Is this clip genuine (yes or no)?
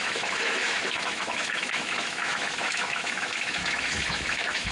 no